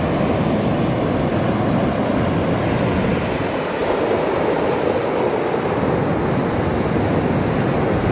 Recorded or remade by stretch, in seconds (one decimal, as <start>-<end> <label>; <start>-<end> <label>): 0.0-8.1 recorded